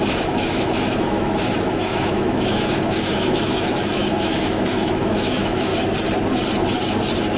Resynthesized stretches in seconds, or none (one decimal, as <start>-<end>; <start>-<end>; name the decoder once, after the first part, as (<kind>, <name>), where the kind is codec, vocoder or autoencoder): 0.0-5.7 (autoencoder, DAC-VAE)